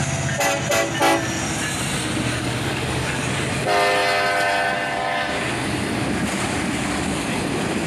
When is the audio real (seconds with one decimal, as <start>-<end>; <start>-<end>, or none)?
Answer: 0.0-2.3; 3.5-7.9